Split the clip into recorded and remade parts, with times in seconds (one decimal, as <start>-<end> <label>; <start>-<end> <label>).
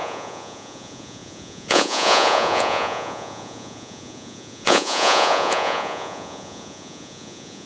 0.0-7.7 remade